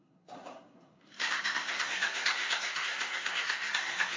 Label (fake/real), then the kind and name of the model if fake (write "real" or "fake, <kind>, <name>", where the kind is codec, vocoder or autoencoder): fake, codec, SNAC